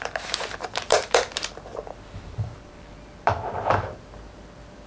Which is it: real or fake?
fake